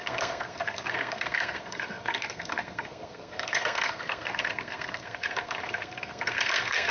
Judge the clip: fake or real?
fake